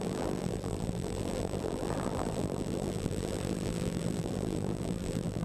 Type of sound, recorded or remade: remade